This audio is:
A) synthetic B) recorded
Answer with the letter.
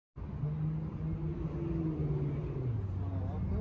B